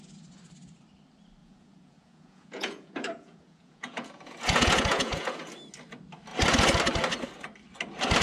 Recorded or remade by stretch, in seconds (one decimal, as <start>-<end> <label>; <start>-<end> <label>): 0.0-1.4 recorded; 1.4-5.5 remade; 5.5-8.2 recorded